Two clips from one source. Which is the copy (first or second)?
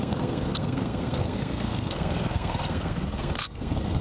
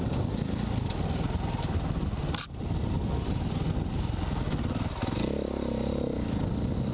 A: first